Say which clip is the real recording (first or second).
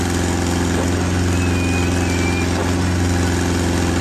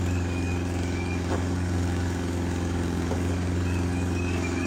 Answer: first